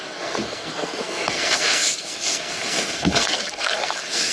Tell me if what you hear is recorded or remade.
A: remade